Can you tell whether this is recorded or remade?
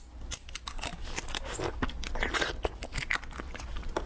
recorded